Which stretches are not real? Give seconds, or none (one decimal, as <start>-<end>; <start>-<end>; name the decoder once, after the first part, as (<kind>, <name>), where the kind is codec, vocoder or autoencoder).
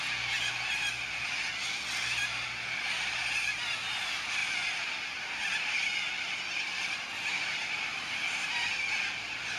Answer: none